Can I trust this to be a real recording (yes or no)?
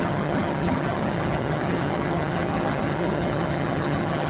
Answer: no